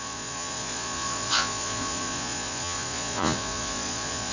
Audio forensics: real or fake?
fake